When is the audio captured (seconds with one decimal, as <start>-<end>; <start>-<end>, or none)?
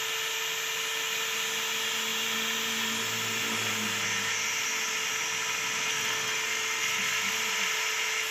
0.0-5.9; 7.4-8.3